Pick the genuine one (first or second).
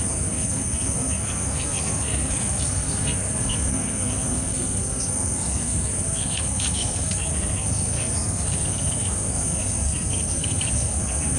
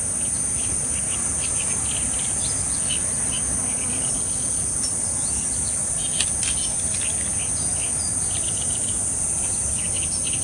second